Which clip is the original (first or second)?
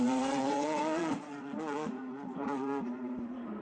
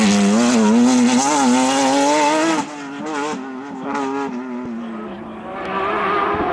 second